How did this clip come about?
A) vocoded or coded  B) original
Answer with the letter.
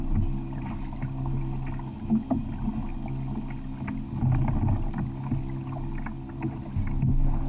B